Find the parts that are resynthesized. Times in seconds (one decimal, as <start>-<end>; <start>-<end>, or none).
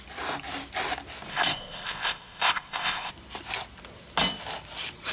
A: 1.3-3.1